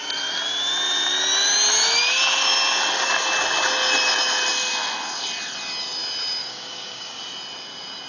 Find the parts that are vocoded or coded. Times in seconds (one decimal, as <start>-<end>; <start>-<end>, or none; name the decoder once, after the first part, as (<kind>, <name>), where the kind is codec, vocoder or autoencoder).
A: 6.4-7.2 (codec, DAC)